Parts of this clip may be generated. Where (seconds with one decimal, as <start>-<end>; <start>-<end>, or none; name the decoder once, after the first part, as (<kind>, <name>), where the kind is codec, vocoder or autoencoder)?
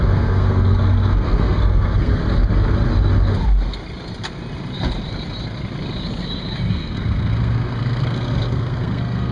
0.0-2.2 (codec, SNAC); 6.7-9.3